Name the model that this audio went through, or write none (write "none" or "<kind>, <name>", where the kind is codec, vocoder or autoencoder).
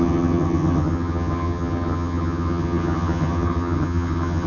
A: vocoder, HiFi-GAN